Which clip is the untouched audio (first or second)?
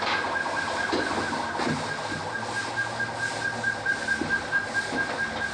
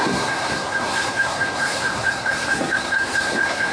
first